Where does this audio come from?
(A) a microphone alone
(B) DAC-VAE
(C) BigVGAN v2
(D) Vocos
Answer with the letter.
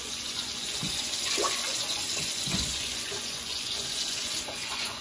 D